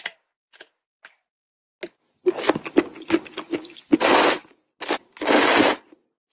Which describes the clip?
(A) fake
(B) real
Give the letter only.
B